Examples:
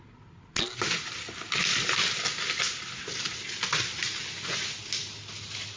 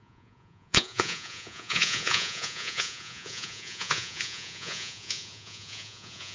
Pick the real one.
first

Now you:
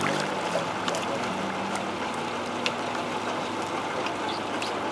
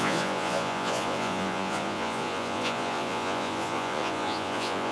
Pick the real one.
first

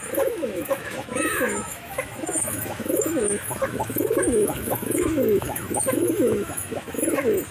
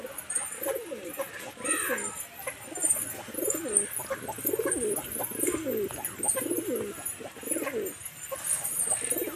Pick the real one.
second